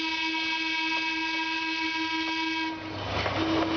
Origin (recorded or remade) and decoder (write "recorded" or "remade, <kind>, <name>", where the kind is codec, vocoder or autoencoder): recorded